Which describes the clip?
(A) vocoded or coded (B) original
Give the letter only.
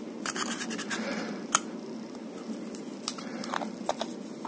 B